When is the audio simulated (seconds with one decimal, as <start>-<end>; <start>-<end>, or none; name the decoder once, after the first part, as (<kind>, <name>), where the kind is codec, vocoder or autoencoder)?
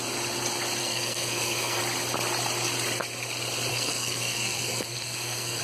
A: 0.8-1.8 (codec, SNAC); 3.7-5.6